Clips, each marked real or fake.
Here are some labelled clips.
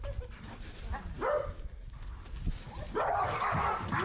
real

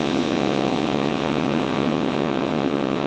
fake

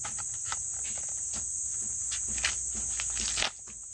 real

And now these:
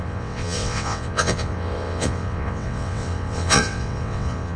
fake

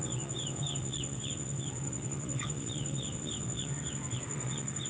fake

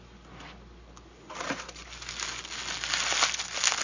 real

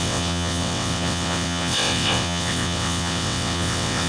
fake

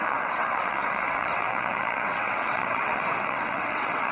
fake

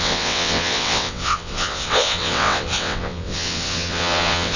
fake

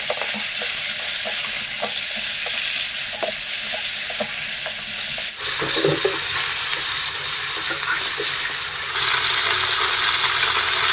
real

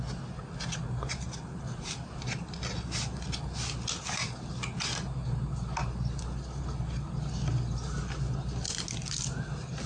real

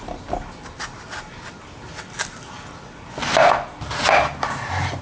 real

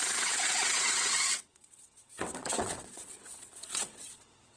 fake